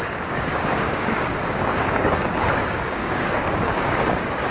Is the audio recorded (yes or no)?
no